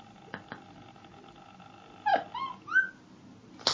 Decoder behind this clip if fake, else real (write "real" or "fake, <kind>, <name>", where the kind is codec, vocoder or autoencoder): real